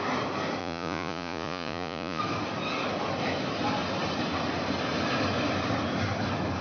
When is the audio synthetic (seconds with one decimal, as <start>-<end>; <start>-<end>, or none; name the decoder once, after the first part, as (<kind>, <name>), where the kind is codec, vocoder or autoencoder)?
0.6-2.2 (vocoder, Vocos)